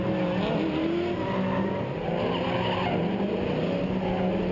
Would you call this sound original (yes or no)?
yes